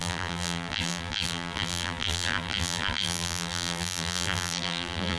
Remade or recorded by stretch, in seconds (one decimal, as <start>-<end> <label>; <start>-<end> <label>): 0.0-5.2 remade